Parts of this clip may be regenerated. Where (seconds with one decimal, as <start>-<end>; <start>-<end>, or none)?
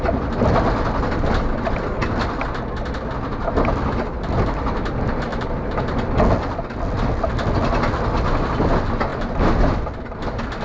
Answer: 5.3-5.8